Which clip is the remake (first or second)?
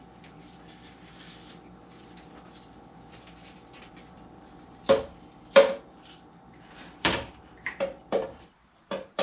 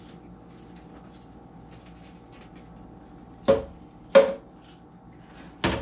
first